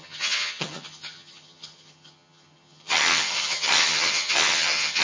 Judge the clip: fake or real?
fake